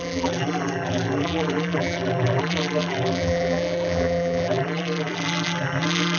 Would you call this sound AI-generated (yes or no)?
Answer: yes